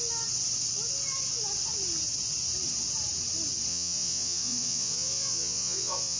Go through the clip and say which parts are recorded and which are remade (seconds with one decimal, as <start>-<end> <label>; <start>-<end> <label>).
0.0-3.7 recorded; 3.7-6.2 remade